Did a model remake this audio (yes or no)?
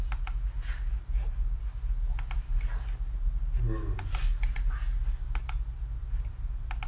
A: no